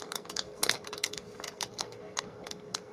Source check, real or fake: fake